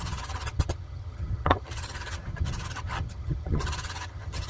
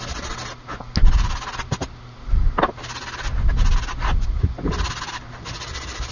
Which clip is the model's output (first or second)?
first